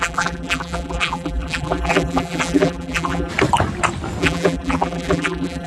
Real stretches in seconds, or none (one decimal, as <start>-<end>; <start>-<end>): 3.3-4.2